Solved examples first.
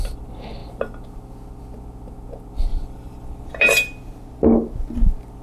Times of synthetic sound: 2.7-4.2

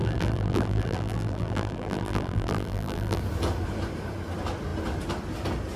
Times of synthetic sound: 0.0-3.2

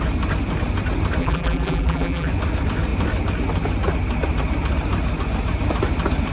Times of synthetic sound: 1.2-2.3